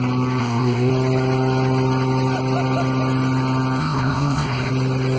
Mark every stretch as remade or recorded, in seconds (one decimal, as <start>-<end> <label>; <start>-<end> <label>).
0.0-0.4 recorded; 0.4-0.9 remade; 0.9-3.8 recorded; 3.8-4.7 remade; 4.7-5.2 recorded